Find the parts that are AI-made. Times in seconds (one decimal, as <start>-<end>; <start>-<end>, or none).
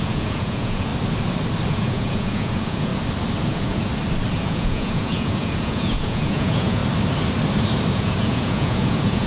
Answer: 0.0-0.9; 1.7-2.9; 3.5-3.9; 4.4-6.8; 7.9-9.3